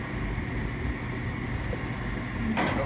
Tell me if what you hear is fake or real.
real